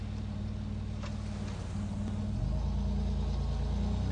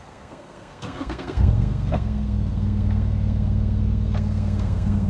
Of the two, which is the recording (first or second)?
first